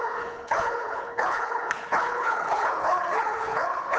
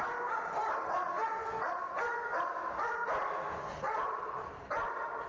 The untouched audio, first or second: second